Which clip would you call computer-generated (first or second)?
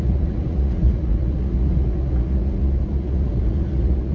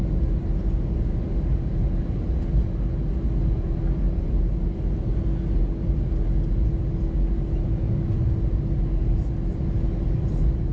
first